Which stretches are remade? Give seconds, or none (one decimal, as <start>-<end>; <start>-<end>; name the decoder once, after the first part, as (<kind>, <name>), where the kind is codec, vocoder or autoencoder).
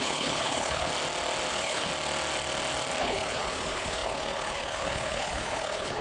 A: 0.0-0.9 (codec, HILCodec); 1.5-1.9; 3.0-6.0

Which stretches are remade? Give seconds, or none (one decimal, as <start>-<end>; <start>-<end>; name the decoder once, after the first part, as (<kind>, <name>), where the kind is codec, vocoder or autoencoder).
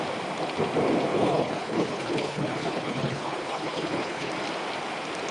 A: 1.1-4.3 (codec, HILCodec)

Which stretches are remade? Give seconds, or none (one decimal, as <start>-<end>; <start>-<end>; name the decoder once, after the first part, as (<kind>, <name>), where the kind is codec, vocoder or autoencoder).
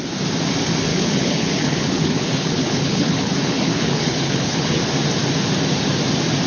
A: 0.9-4.8 (codec, HILCodec)